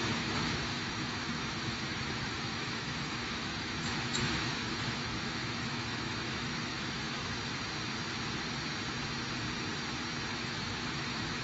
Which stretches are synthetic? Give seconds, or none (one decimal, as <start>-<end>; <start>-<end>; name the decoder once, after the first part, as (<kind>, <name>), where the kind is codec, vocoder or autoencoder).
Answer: 0.0-7.2 (autoencoder, DAC-VAE); 10.3-11.4